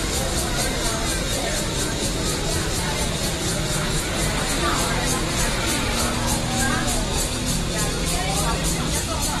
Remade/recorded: recorded